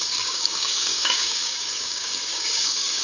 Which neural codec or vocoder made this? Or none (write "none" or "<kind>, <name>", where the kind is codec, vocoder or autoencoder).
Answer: codec, DAC